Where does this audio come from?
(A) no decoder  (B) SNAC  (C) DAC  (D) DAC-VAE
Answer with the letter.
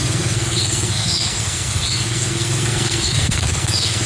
B